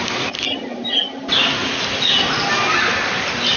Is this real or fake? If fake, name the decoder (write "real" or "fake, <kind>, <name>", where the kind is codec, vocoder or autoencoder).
real